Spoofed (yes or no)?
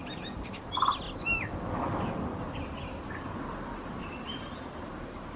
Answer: no